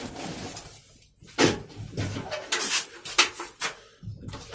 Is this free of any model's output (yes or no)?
no